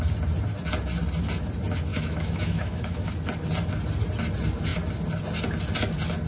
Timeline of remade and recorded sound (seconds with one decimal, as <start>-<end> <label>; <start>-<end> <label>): 0.0-1.9 recorded; 1.9-3.1 remade; 3.1-6.3 recorded